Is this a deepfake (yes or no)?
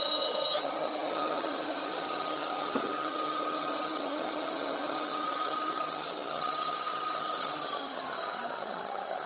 yes